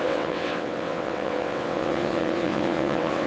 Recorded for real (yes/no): no